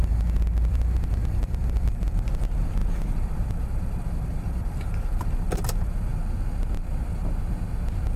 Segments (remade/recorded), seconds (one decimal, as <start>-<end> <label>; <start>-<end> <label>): 0.0-0.7 recorded; 0.7-6.1 remade; 6.1-8.2 recorded